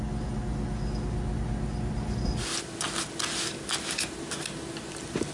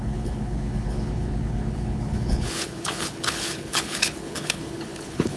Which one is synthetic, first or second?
second